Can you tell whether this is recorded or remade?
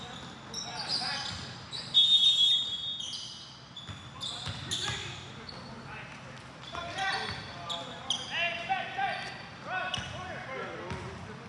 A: recorded